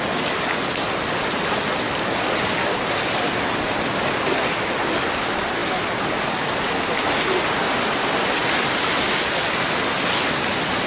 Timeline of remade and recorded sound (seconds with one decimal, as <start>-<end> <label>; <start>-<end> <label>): 0.0-10.9 recorded